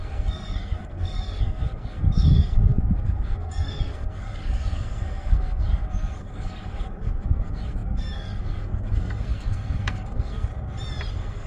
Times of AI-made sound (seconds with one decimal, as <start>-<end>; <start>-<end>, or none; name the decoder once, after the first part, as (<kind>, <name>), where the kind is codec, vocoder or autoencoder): 0.0-10.5 (codec, SNAC); 11.1-11.5